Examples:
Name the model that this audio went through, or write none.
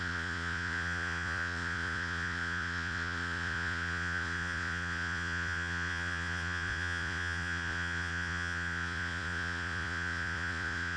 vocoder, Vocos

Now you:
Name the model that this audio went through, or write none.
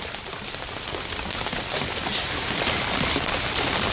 none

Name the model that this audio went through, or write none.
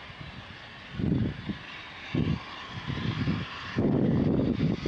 none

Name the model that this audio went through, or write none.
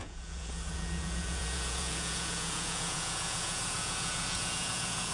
vocoder, Vocos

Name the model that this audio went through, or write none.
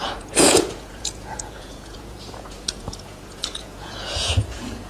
vocoder, Vocos